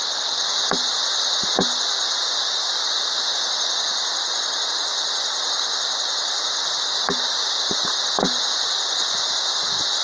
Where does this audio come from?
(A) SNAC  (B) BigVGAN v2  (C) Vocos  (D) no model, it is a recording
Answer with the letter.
B